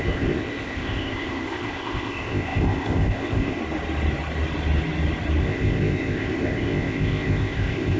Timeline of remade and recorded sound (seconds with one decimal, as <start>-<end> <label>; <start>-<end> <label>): 0.0-3.6 remade; 3.6-5.4 recorded; 5.4-8.0 remade